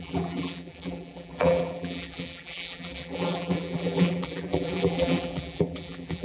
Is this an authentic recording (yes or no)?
no